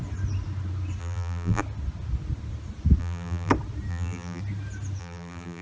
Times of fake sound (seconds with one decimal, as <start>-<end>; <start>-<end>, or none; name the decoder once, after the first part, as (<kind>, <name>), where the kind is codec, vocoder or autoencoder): 1.0-1.6 (vocoder, BigVGAN v2); 3.0-3.5; 3.9-4.4; 5.0-5.6